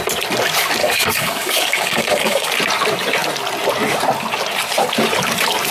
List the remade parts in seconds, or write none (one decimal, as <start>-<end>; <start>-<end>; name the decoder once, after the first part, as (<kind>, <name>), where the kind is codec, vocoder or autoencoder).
0.8-2.5 (codec, DAC)